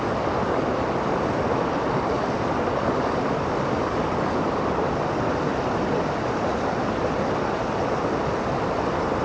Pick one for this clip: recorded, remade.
recorded